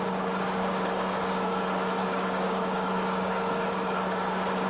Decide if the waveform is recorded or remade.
remade